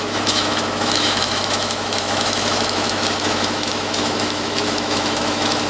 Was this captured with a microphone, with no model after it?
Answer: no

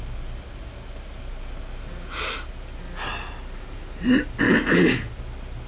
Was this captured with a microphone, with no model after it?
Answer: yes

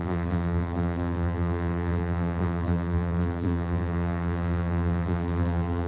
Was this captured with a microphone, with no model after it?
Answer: no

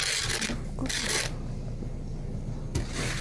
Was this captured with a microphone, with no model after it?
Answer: yes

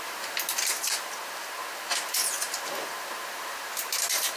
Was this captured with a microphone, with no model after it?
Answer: yes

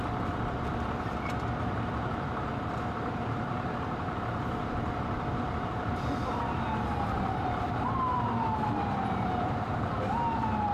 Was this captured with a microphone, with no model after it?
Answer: no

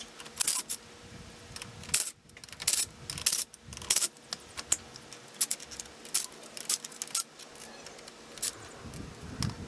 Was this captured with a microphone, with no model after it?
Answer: yes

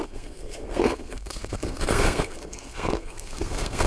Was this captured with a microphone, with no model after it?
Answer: no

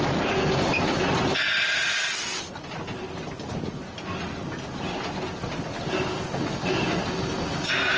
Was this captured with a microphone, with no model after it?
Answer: yes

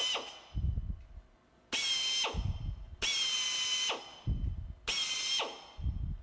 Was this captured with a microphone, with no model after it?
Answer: yes